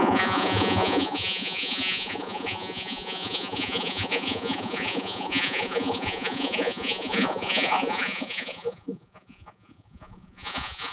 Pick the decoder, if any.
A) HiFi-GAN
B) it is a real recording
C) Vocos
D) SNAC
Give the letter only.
C